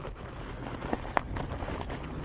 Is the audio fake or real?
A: real